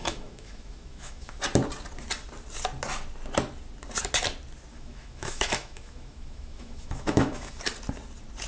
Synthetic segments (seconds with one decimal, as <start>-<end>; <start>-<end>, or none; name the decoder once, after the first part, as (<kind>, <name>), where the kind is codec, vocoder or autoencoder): 0.0-1.4 (autoencoder, DAC-VAE); 4.7-7.6

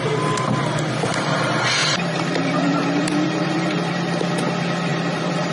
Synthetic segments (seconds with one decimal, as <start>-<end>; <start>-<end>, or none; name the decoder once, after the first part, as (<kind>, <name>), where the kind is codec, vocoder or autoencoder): 1.8-4.1 (vocoder, BigVGAN v2); 4.9-5.5

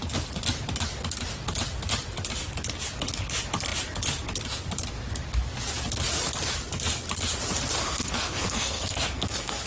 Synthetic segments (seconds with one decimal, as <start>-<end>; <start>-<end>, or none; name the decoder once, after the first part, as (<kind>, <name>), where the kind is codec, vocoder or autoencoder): 7.8-9.7 (codec, SNAC)

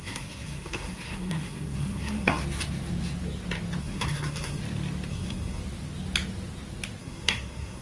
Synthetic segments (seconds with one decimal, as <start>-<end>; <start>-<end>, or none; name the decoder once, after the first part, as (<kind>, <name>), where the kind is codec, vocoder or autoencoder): 0.0-2.4 (codec, SNAC); 3.8-4.6; 5.1-5.6; 7.0-7.8